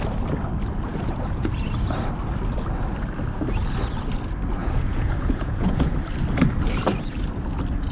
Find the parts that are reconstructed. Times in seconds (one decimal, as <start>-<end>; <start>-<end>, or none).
0.9-1.5; 4.6-5.9